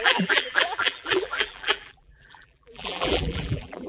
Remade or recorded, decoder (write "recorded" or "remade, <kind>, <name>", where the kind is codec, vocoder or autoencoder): remade, vocoder, BigVGAN v2